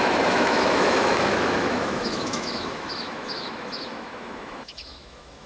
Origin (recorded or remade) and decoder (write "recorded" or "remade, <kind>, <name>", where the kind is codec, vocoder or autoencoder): remade, autoencoder, DAC-VAE